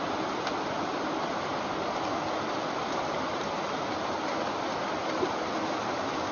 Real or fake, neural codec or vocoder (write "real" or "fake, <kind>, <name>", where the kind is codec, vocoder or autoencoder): real